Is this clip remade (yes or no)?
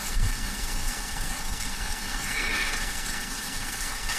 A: yes